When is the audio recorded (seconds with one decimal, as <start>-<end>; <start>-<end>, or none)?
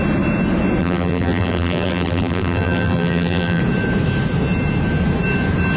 0.0-0.8; 3.6-5.8